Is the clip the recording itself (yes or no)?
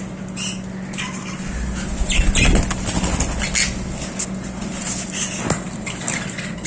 yes